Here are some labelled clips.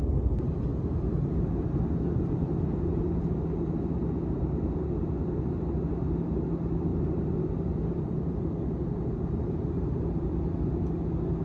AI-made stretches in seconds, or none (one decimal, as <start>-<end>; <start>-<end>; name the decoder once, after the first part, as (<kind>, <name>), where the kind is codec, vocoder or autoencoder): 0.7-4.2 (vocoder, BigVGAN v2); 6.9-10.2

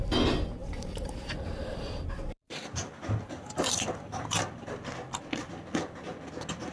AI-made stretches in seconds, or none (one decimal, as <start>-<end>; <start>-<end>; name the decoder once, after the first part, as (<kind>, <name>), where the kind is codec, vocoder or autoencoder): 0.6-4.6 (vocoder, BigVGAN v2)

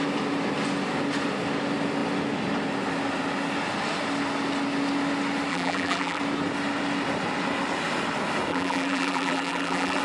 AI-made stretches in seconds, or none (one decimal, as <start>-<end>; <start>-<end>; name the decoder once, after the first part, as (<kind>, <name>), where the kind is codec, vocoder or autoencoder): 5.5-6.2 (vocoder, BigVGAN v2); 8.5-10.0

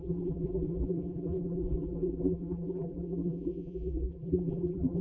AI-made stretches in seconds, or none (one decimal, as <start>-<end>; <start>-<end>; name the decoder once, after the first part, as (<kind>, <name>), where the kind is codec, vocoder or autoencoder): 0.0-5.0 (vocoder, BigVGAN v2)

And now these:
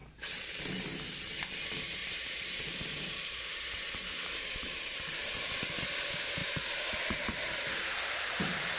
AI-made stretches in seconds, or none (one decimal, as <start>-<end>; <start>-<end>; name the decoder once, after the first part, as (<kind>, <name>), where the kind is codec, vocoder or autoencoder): 2.0-5.3 (vocoder, BigVGAN v2); 6.4-8.8